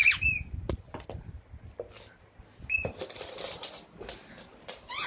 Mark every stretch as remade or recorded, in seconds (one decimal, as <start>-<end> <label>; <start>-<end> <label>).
0.0-5.1 recorded